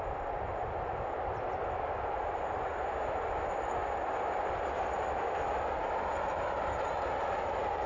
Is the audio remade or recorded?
recorded